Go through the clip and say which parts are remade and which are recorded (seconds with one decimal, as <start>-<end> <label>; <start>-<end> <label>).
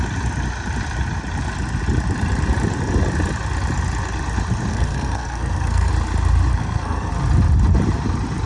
0.0-4.7 recorded; 4.7-5.9 remade; 5.9-6.5 recorded; 6.5-7.1 remade; 7.1-8.5 recorded